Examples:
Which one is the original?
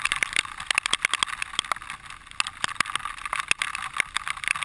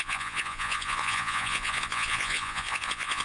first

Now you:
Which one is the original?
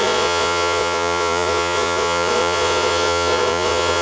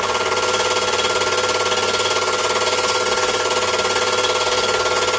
second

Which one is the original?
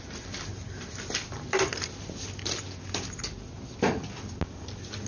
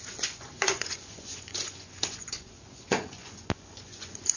first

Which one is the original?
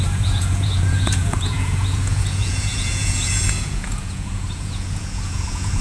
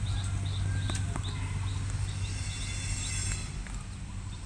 second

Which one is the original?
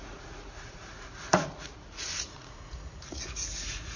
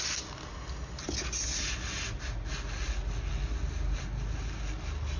second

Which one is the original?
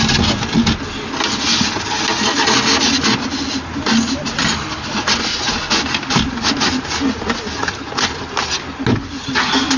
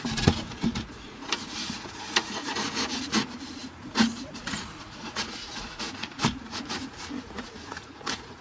first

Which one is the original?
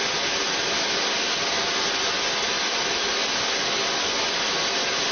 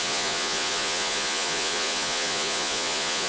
first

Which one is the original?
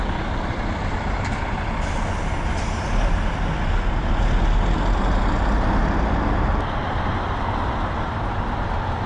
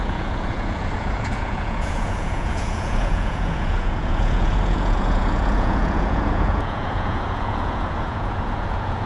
first